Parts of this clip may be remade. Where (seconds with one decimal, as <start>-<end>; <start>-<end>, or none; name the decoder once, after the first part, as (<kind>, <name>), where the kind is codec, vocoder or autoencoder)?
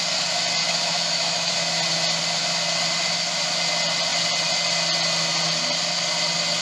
0.6-1.5 (autoencoder, DAC-VAE)